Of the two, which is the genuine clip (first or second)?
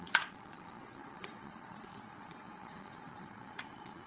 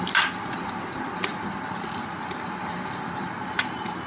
second